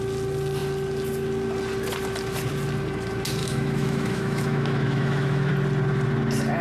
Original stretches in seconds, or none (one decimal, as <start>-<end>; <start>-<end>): 0.0-3.4; 5.5-6.6